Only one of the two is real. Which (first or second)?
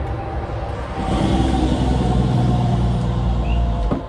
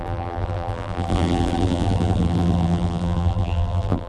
first